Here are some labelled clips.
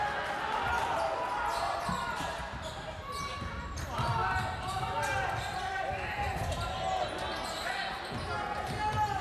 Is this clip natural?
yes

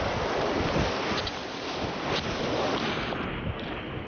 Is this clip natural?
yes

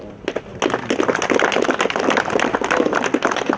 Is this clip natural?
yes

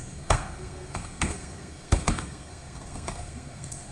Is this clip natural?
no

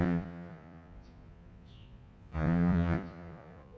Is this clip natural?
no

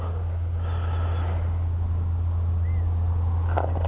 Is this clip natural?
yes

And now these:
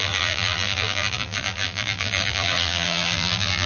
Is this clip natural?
no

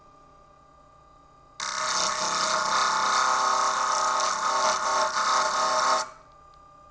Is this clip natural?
yes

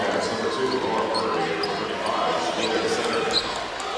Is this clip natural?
yes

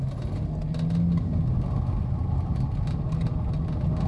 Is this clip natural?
yes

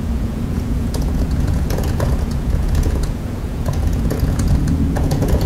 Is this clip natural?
no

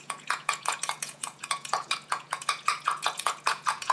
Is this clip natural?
no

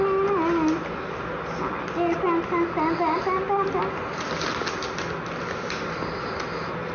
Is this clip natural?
yes